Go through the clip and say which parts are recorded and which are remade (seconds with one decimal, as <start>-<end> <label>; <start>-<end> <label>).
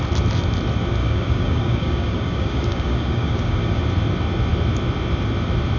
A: 0.0-1.0 recorded; 1.0-3.8 remade; 3.8-5.8 recorded